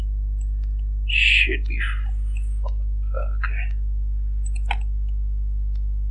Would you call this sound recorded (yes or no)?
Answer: yes